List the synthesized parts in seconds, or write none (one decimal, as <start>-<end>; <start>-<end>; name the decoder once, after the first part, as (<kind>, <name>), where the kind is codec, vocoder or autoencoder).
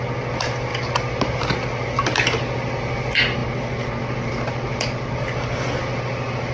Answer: none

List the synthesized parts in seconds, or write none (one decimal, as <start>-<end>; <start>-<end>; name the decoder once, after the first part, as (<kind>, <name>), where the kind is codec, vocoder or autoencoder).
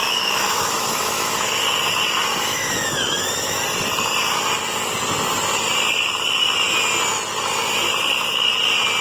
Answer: 0.0-1.5 (autoencoder, DAC-VAE); 2.3-3.6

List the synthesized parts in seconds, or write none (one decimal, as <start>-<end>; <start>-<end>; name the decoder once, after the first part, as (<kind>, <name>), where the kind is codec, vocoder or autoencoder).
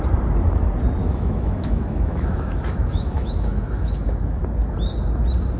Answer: 1.0-4.4 (autoencoder, DAC-VAE)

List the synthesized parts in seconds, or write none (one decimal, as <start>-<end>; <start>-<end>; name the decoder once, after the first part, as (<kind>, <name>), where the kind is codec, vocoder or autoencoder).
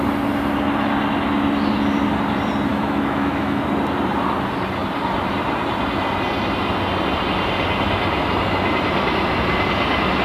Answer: 2.7-3.6 (autoencoder, DAC-VAE)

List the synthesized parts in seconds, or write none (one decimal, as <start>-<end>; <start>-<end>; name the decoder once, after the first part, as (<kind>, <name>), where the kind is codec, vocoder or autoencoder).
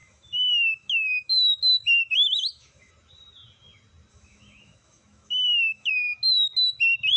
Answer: 0.0-2.9 (autoencoder, DAC-VAE); 4.1-5.9